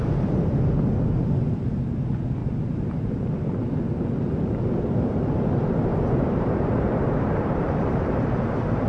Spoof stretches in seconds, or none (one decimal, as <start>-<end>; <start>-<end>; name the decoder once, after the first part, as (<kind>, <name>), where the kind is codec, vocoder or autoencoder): 2.4-3.2 (vocoder, BigVGAN v2); 5.9-8.9